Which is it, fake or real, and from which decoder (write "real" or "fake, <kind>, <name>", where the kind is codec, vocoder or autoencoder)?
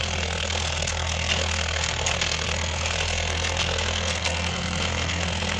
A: fake, codec, SNAC